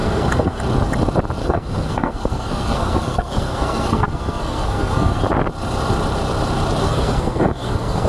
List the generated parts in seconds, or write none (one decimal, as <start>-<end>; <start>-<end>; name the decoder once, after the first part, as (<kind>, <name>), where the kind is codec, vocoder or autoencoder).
0.0-0.6 (codec, SNAC); 1.4-5.2; 6.8-8.1